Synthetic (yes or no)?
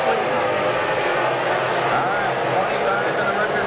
no